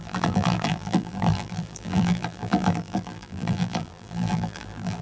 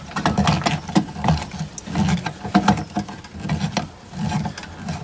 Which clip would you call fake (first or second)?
first